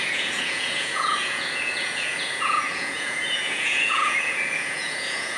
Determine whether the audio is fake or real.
fake